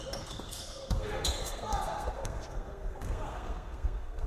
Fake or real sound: fake